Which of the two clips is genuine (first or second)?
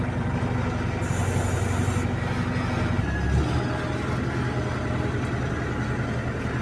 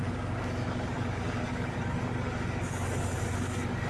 first